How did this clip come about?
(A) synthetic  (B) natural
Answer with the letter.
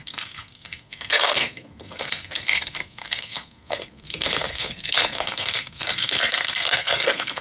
A